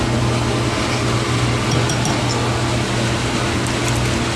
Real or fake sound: real